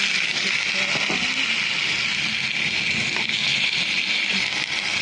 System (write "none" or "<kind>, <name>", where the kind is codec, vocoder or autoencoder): none